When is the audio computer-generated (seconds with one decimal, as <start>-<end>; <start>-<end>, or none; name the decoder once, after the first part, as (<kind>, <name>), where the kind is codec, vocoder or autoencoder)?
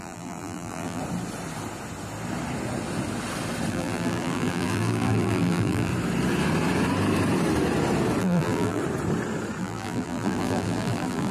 0.0-1.0 (vocoder, BigVGAN v2); 3.7-5.9; 8.2-8.8; 9.6-11.3